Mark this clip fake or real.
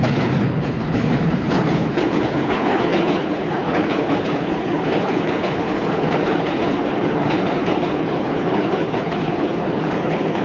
fake